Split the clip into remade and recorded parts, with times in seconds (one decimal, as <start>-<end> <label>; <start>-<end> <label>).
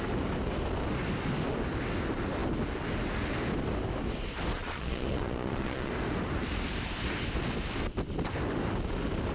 0.0-4.6 recorded; 4.6-5.9 remade; 5.9-9.3 recorded